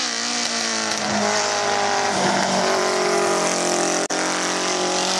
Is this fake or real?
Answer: real